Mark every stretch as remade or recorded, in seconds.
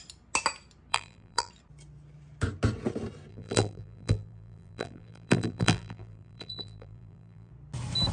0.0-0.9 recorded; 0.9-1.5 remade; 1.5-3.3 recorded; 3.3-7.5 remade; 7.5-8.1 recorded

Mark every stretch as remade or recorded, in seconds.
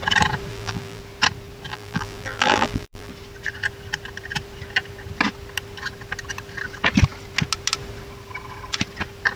0.0-0.5 recorded; 0.5-1.0 remade; 1.0-1.7 recorded; 1.7-3.1 remade; 3.1-9.3 recorded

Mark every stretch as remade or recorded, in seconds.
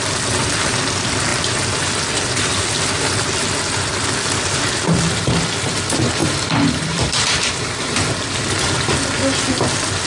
0.0-6.2 recorded; 6.2-8.1 remade; 8.1-10.1 recorded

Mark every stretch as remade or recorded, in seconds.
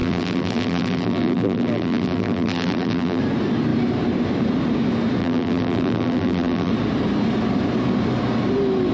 0.0-3.2 remade; 3.2-5.2 recorded; 5.2-6.7 remade; 6.7-8.9 recorded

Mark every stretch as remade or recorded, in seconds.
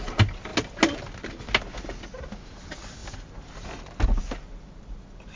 0.0-3.0 recorded; 3.0-4.2 remade; 4.2-5.4 recorded